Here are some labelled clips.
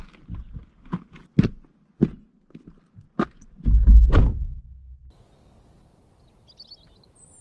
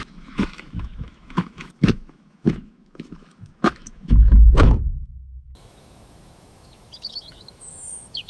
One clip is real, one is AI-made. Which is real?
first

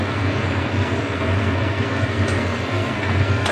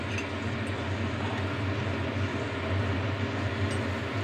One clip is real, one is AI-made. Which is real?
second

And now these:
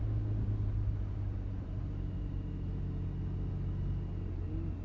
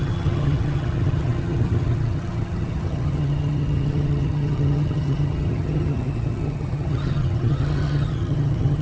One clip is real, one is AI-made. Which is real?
first